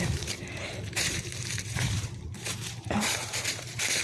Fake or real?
fake